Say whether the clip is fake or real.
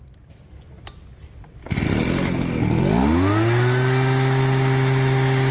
real